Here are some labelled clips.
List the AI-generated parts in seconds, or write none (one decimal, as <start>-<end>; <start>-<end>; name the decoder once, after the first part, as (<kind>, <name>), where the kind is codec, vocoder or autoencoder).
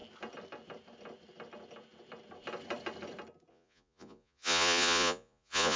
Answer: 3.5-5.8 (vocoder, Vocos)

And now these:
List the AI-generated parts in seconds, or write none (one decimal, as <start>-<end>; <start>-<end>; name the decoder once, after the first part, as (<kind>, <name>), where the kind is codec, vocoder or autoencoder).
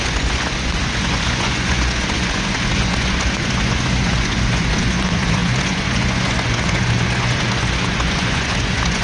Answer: 0.0-9.0 (vocoder, Vocos)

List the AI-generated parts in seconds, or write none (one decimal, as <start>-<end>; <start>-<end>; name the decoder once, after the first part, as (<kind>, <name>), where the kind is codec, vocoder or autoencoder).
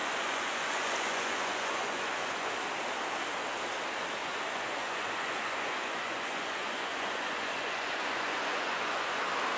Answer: 0.0-2.5 (vocoder, Vocos); 4.2-9.2